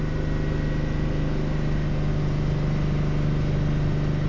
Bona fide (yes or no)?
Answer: yes